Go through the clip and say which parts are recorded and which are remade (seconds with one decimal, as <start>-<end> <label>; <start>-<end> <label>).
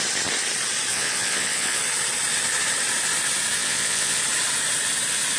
0.0-0.9 recorded; 0.9-1.8 remade; 1.8-3.6 recorded; 3.6-4.2 remade; 4.2-5.4 recorded